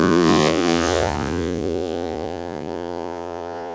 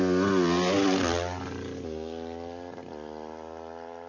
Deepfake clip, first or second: first